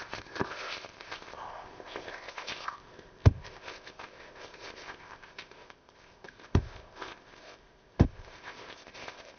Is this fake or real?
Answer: fake